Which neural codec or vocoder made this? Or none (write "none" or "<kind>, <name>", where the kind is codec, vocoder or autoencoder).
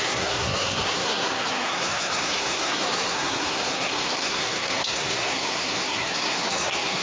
codec, SNAC